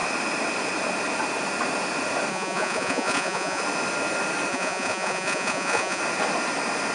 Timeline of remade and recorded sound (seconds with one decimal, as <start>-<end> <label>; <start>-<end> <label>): 0.0-2.3 recorded; 2.3-3.6 remade; 3.6-4.5 recorded; 4.5-6.0 remade; 6.0-6.9 recorded